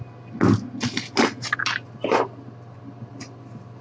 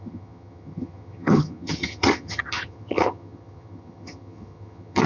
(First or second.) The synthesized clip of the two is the second